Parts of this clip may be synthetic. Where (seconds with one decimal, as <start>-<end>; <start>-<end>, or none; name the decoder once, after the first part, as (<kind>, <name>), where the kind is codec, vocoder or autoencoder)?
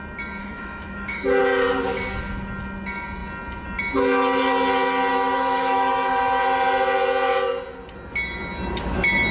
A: 0.4-1.4 (autoencoder, DAC-VAE); 5.1-5.9